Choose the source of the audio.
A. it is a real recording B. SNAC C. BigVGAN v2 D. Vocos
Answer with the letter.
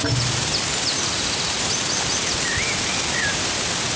A